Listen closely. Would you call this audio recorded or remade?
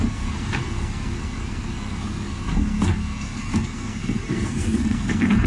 remade